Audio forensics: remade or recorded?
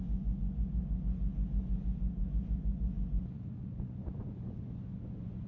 remade